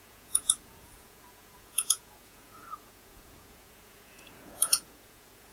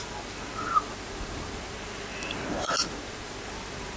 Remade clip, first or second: first